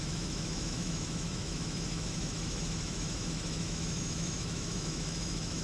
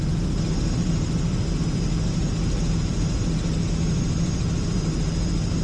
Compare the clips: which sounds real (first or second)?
second